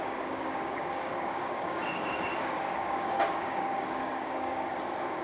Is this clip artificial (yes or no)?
yes